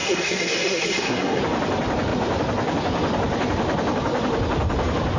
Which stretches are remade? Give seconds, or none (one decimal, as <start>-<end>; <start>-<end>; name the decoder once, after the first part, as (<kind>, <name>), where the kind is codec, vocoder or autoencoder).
0.0-1.4 (codec, SNAC)